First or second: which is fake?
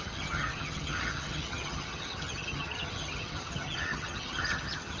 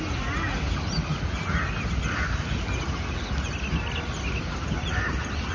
first